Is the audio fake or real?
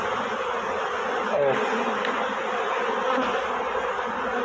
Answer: real